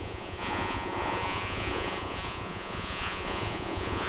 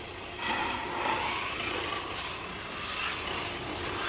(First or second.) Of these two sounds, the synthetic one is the first